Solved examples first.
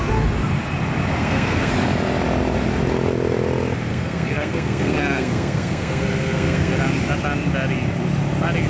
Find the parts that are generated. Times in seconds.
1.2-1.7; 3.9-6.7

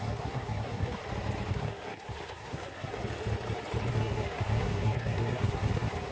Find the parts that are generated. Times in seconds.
0.0-1.0; 1.5-3.0; 3.9-6.1

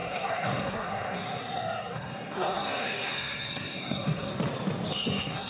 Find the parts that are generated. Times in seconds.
0.0-4.3; 4.9-5.5

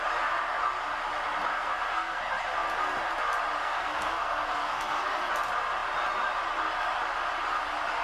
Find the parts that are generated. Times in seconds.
1.5-2.2; 3.6-5.3

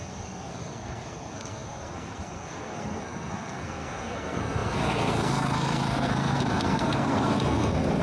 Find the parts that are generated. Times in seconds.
0.0-8.0